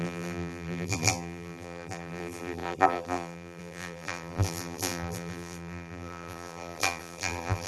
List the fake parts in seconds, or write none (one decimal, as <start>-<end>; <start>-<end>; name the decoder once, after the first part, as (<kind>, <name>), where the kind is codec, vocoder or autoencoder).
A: 0.0-7.7 (vocoder, BigVGAN v2)